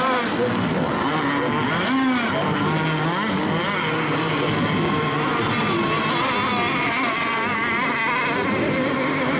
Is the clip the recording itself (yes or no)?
yes